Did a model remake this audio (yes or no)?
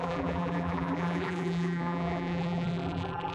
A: yes